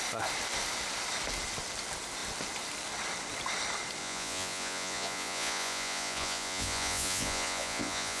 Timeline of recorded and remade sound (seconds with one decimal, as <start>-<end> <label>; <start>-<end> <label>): 0.0-4.0 recorded; 4.0-8.2 remade

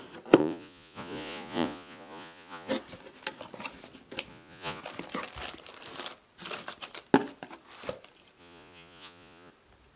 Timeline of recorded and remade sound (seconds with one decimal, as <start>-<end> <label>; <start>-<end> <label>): 0.0-0.4 recorded; 0.4-2.7 remade; 2.7-4.3 recorded; 4.3-4.8 remade; 4.8-8.4 recorded; 8.4-9.5 remade; 9.5-10.0 recorded

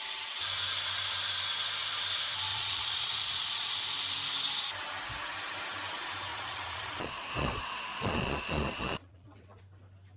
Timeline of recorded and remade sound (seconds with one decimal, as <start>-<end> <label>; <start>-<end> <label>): 0.0-2.5 recorded; 2.5-3.8 remade; 3.8-6.3 recorded; 6.3-9.6 remade; 9.6-10.2 recorded

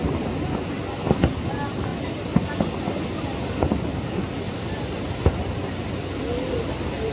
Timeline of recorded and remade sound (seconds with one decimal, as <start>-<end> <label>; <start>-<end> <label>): 0.0-7.1 recorded